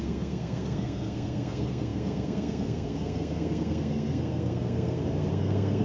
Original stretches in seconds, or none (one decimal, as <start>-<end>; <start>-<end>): none